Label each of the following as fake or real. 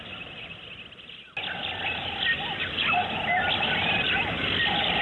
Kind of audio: real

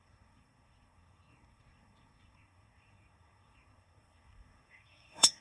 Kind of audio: fake